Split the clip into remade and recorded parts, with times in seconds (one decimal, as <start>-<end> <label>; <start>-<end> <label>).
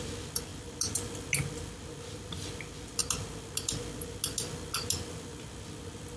0.0-6.2 recorded